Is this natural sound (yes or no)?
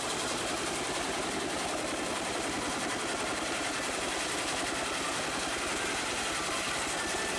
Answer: no